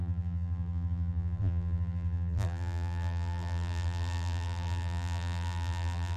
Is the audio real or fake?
fake